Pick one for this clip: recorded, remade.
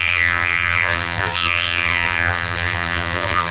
remade